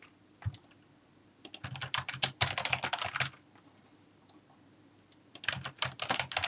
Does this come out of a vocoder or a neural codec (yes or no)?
no